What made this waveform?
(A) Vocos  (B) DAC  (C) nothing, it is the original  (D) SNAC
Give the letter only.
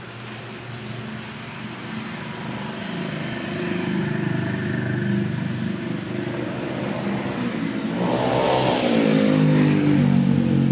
C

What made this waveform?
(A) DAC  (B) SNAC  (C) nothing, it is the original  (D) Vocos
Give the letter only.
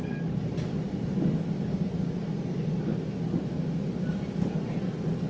C